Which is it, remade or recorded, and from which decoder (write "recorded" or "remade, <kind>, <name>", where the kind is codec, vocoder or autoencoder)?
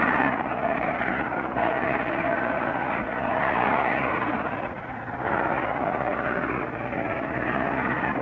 remade, vocoder, Vocos